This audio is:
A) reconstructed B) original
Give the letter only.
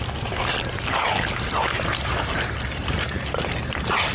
B